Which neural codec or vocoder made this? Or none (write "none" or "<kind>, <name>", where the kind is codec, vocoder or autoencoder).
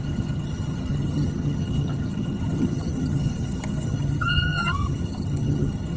vocoder, HiFi-GAN